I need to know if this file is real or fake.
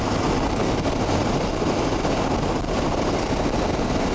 real